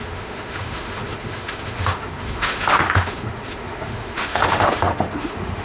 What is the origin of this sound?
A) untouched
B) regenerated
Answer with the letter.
B